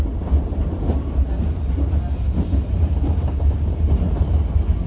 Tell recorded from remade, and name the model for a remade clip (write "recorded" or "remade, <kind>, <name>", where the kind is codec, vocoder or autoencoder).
recorded